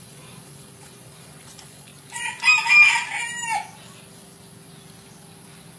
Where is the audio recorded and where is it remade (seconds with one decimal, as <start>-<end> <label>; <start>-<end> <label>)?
0.0-1.9 remade; 1.9-5.8 recorded